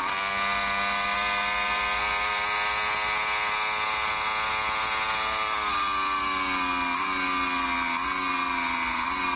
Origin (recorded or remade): recorded